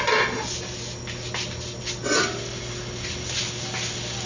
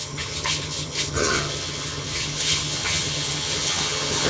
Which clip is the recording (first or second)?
first